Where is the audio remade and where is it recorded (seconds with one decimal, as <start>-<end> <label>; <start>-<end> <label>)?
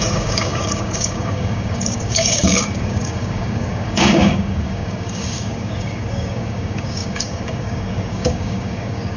0.0-9.2 remade